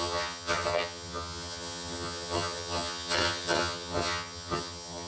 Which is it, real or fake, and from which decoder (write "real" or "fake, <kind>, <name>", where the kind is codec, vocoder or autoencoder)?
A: fake, vocoder, HiFi-GAN